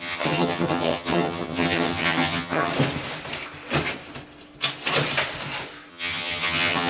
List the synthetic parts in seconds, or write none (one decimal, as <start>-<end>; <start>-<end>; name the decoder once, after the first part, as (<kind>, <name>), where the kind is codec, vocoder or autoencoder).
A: 0.0-2.7 (vocoder, HiFi-GAN); 5.9-6.9